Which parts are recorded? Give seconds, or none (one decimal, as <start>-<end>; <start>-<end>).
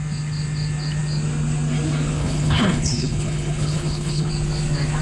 0.0-2.2; 4.3-5.0